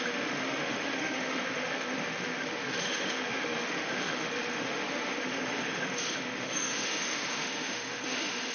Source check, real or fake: fake